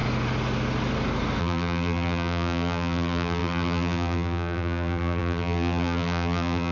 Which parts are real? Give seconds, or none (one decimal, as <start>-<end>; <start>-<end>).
0.0-1.4